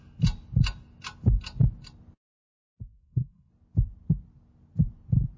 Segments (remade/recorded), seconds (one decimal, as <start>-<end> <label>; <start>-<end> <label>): 0.0-2.9 recorded; 2.9-3.5 remade; 3.5-5.4 recorded